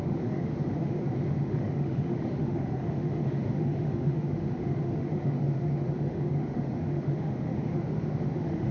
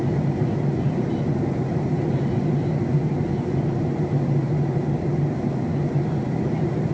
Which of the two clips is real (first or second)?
second